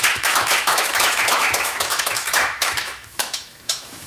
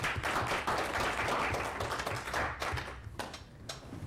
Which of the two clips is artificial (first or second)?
first